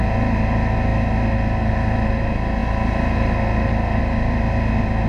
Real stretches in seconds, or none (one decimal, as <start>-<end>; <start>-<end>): 0.0-5.1